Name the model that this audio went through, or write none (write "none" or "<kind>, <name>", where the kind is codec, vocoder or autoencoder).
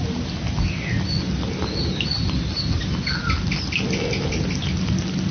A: none